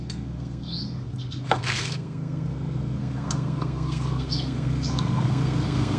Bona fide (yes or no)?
no